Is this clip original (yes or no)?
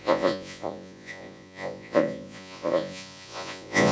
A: no